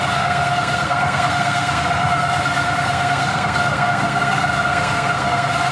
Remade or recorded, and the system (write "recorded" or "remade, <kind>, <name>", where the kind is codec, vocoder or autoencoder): remade, codec, SNAC